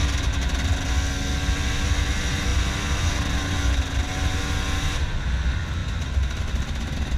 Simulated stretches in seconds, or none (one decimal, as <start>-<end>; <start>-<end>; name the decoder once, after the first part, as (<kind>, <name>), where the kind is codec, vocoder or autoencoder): none